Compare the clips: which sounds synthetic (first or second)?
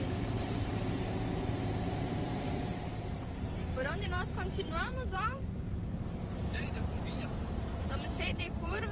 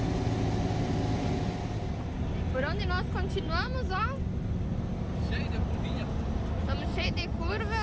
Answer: first